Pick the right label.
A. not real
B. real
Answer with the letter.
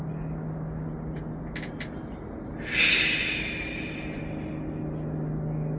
B